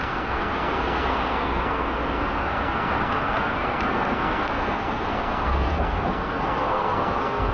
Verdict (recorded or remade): remade